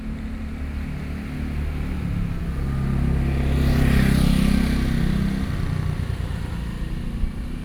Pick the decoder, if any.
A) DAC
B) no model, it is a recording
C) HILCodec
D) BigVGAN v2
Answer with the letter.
B